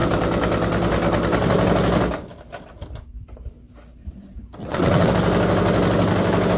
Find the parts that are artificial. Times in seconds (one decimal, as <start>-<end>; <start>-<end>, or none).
4.6-5.1